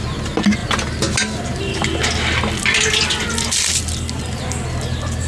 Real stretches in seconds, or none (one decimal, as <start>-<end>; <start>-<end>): 0.0-5.3